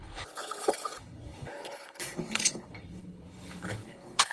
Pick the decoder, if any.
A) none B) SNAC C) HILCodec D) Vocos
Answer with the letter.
C